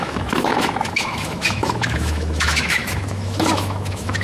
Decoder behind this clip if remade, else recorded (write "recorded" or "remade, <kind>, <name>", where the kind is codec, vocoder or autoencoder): remade, autoencoder, DAC-VAE